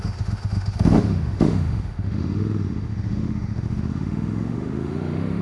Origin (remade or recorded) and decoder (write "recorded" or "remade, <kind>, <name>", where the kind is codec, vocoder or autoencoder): remade, autoencoder, DAC-VAE